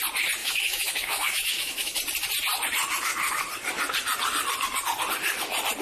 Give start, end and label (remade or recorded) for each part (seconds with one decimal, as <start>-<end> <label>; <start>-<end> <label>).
0.0-0.4 recorded; 0.4-2.0 remade; 2.0-5.8 recorded